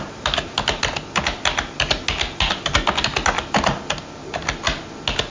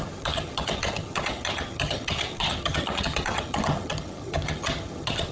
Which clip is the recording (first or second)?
first